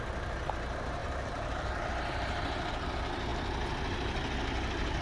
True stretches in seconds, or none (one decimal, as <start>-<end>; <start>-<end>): 0.0-1.0; 2.7-5.0